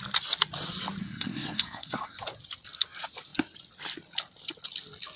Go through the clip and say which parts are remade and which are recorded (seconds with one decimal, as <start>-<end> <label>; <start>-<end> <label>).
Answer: 0.0-1.0 recorded; 1.0-2.2 remade; 2.2-5.2 recorded